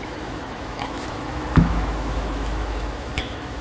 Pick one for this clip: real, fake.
fake